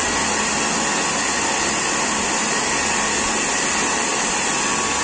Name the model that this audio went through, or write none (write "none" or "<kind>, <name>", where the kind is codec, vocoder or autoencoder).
none